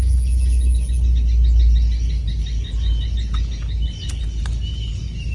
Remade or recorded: recorded